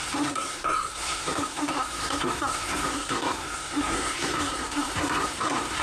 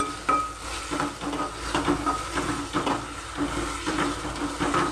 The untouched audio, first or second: second